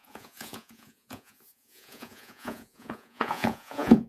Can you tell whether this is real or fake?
fake